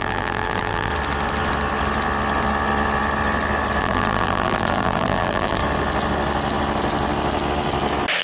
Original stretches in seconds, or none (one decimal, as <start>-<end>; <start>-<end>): 0.9-3.8; 5.6-8.2